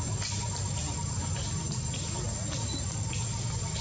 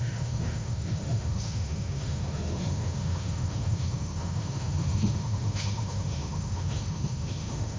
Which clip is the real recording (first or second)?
first